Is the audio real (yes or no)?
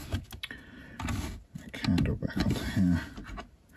yes